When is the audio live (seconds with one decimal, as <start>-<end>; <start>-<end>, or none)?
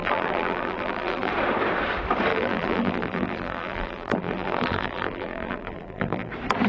1.3-2.3; 6.3-6.7